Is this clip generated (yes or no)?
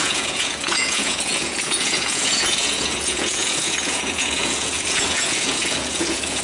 yes